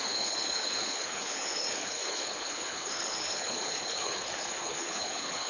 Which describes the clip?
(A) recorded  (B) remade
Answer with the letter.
B